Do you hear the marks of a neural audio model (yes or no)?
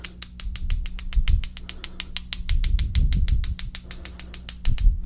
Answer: no